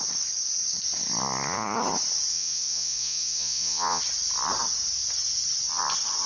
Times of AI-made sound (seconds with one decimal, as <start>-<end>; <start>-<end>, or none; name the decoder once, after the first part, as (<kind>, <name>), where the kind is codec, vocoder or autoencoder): 2.3-4.0 (vocoder, Vocos)